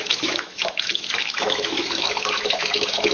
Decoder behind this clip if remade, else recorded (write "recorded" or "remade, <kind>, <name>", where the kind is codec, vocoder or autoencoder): remade, autoencoder, DAC-VAE